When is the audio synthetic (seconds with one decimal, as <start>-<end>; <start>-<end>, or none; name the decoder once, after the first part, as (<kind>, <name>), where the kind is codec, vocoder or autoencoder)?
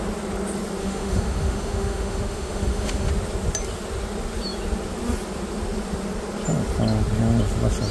0.8-3.1 (autoencoder, DAC-VAE)